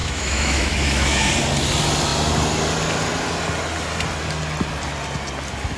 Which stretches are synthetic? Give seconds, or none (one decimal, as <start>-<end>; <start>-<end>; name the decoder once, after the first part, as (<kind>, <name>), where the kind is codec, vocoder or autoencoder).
0.0-1.3 (autoencoder, DAC-VAE)